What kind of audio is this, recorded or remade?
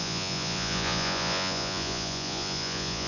remade